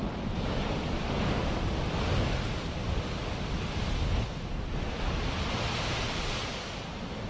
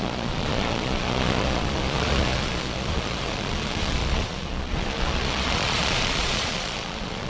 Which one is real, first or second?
first